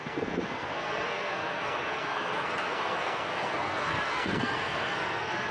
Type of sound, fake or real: fake